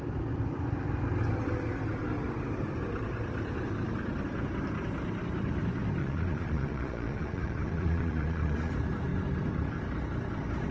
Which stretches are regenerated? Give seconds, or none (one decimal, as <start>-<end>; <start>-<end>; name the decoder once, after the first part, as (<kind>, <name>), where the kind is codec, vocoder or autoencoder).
6.0-8.7 (vocoder, Vocos)